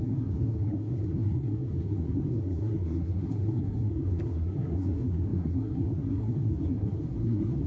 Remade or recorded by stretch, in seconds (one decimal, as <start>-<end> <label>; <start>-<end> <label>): 0.0-7.7 remade